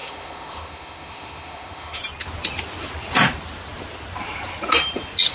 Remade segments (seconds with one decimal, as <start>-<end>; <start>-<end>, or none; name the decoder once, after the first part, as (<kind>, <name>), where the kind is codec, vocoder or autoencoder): 0.0-2.0 (autoencoder, DAC-VAE)